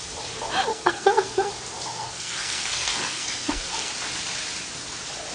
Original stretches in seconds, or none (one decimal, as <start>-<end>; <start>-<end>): 0.0-0.7; 1.5-1.9; 3.9-5.3